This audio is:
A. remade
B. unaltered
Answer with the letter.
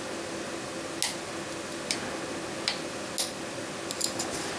B